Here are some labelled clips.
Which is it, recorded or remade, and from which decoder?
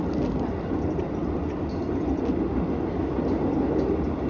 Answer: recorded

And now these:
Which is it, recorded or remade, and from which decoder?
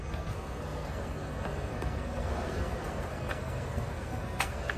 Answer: remade, codec, SNAC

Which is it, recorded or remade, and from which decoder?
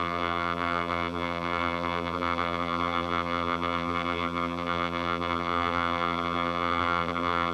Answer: remade, vocoder, BigVGAN v2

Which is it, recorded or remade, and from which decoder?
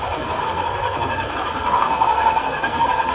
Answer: remade, codec, SNAC